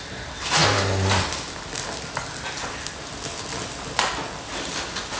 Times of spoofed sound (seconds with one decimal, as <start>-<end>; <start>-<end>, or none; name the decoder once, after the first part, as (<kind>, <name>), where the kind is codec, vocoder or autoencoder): none